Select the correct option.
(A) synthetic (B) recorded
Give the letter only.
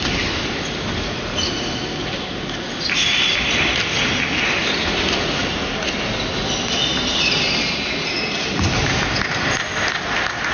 B